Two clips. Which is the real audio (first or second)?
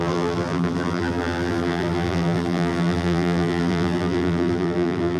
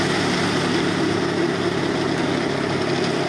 second